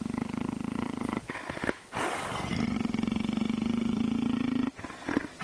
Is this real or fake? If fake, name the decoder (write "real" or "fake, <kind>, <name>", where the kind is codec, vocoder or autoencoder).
real